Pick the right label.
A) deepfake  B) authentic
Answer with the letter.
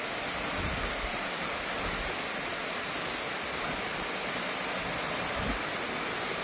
B